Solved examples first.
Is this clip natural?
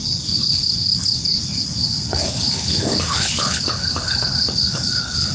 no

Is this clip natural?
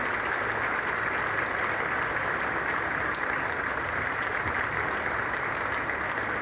yes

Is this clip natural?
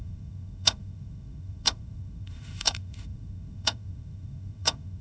no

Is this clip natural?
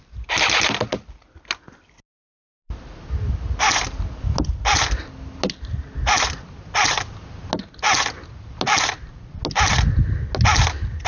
yes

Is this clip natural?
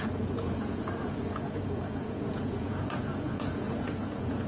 no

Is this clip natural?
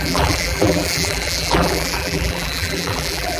no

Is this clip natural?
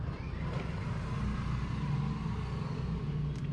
yes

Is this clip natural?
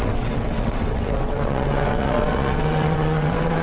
no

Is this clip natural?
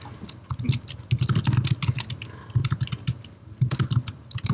yes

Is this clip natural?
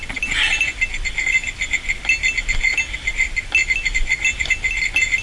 yes